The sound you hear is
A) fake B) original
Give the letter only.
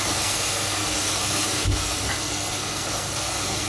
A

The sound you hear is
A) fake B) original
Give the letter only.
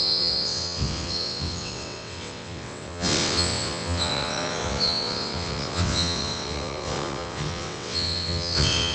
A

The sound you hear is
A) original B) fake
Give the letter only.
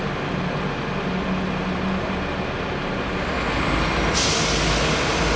A